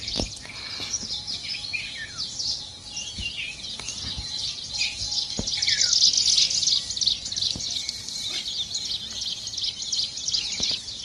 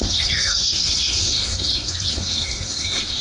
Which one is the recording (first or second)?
first